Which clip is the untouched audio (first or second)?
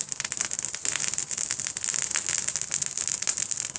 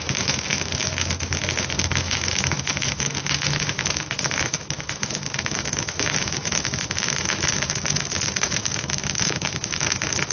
first